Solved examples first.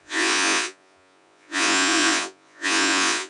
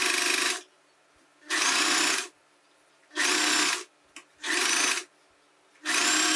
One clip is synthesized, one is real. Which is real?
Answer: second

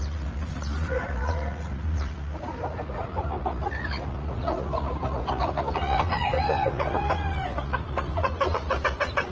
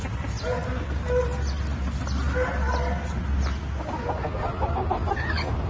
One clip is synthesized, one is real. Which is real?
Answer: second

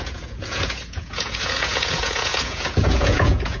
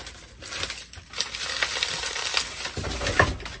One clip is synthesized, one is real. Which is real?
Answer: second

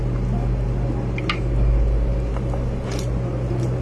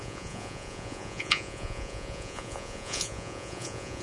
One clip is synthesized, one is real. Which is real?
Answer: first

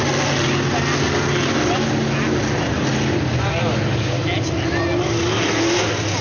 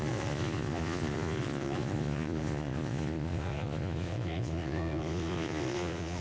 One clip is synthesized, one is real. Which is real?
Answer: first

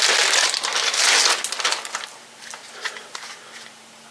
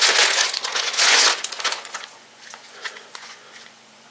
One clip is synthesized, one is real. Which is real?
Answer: first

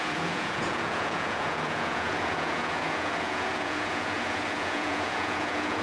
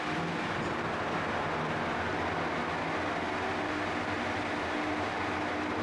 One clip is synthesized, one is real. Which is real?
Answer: second